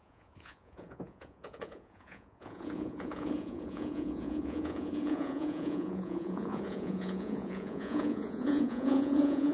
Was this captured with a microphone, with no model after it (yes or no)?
no